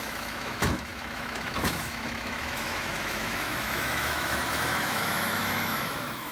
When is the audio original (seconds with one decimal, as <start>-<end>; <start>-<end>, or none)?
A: none